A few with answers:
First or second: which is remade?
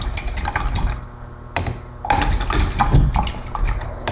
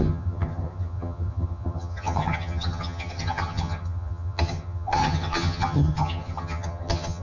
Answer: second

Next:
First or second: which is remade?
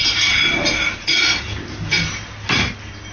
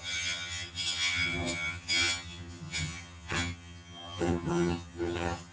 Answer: second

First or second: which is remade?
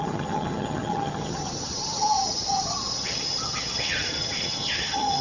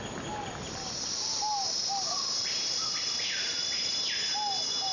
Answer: first